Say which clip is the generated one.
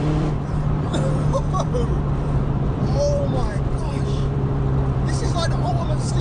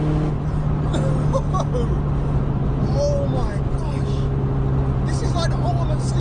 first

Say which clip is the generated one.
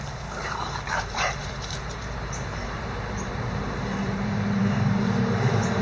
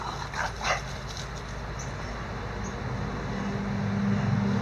first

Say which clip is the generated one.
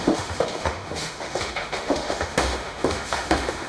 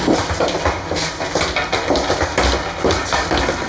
first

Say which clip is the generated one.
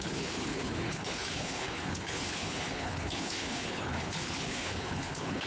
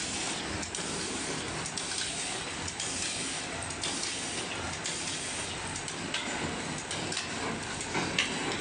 first